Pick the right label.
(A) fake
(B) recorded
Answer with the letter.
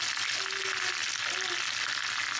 B